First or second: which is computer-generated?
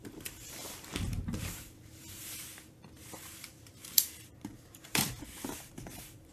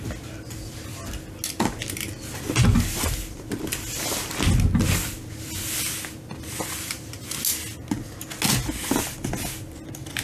first